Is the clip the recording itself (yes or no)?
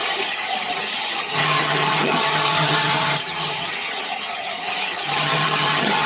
no